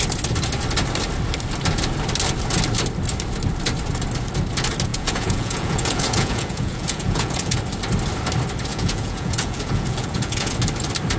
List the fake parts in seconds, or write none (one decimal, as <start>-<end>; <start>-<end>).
4.9-7.6; 8.7-10.6